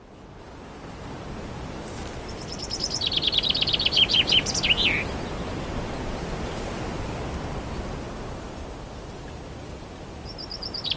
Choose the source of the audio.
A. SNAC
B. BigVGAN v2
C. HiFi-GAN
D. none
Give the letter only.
D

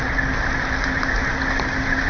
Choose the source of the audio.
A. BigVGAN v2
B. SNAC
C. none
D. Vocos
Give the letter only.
C